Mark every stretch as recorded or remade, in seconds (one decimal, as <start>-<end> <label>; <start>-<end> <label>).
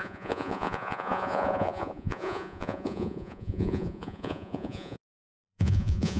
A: 0.0-6.2 remade